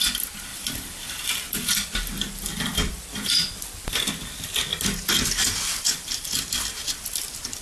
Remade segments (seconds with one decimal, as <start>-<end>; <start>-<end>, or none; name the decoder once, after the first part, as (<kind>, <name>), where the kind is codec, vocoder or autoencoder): 0.5-4.1 (vocoder, BigVGAN v2); 4.7-6.2